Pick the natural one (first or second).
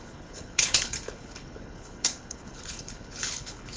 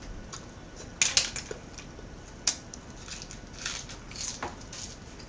second